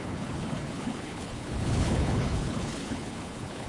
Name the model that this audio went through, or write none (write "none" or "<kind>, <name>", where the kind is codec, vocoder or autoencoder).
codec, HILCodec